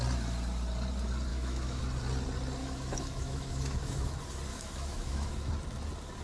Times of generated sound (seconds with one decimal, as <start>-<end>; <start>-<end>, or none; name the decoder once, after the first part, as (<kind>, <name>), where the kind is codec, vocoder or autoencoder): 1.3-1.8 (autoencoder, DAC-VAE); 2.6-4.1; 4.5-5.5